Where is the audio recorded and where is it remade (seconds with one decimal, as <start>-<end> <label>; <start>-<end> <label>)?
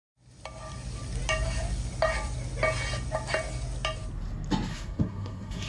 0.0-4.7 recorded; 4.7-5.7 remade